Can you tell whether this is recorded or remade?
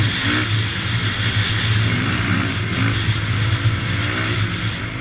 recorded